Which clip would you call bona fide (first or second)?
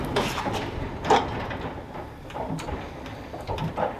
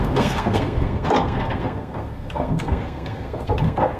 first